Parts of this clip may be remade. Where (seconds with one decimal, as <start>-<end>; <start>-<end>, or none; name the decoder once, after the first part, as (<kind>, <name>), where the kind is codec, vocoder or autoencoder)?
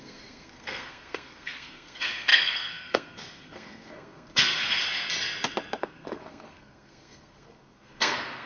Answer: 0.0-4.8 (codec, SNAC); 5.8-8.5